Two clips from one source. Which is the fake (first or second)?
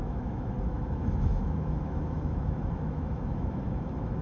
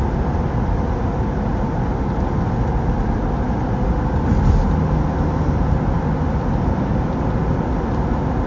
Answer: first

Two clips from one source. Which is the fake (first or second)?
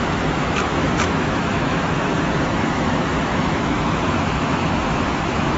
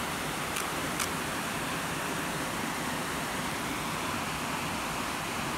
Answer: first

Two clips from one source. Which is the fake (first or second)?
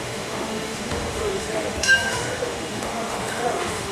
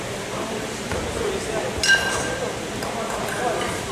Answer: first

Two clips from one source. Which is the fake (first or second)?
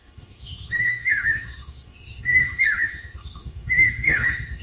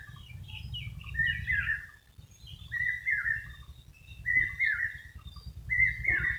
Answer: first